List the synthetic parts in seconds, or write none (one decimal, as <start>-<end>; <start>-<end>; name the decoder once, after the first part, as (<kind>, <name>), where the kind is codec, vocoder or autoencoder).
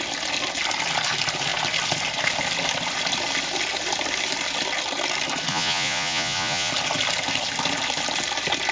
5.5-6.7 (vocoder, Vocos)